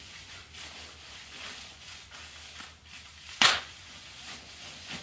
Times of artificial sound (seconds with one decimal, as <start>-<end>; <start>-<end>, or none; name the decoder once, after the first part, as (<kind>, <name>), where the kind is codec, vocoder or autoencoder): 0.0-0.4 (vocoder, Vocos); 1.1-2.2; 3.3-5.0